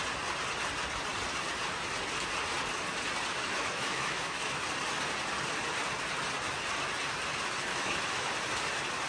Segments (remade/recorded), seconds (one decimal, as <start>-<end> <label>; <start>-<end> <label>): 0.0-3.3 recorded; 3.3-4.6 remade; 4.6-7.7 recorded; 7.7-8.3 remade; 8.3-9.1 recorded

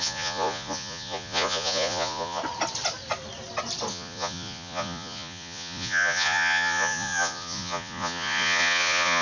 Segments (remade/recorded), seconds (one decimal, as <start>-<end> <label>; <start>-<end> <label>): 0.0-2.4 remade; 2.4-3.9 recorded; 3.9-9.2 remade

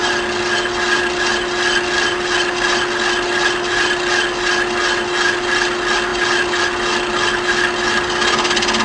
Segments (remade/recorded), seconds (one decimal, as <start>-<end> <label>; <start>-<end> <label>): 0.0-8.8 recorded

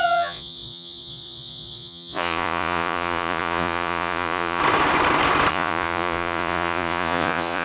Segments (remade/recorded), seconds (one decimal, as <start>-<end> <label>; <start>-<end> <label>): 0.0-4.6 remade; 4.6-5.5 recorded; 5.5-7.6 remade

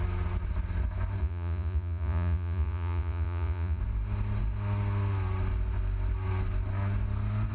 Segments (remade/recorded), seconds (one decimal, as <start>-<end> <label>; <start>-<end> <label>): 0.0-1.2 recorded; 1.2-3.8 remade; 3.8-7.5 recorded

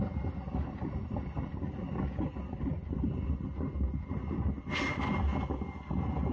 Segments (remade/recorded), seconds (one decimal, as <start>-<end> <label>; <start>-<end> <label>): 0.0-6.3 recorded

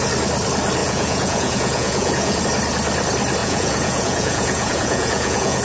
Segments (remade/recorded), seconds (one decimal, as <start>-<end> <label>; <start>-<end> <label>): 0.0-0.8 recorded; 0.8-2.4 remade; 2.4-3.4 recorded; 3.4-5.6 remade